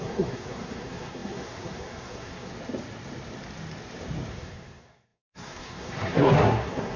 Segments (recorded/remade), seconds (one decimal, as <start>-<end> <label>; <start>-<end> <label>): 0.0-2.5 remade; 2.5-4.3 recorded; 4.3-7.0 remade